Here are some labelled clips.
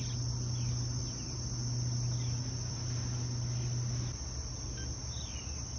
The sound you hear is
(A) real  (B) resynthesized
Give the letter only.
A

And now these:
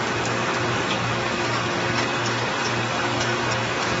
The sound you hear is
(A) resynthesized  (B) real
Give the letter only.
A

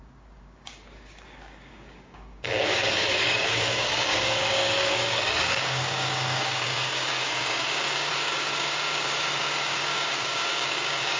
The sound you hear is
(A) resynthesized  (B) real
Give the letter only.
A